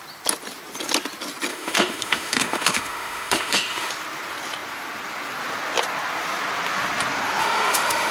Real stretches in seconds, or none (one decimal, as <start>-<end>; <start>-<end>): 0.0-1.5; 3.9-7.4